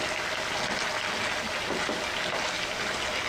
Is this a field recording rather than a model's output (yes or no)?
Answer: yes